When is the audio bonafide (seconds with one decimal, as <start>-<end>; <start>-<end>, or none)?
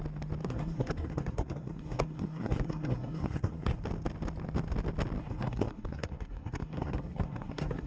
0.0-0.4; 3.8-5.2